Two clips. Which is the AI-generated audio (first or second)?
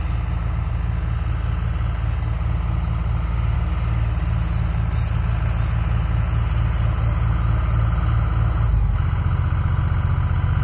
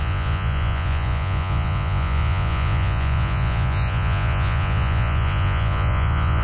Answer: second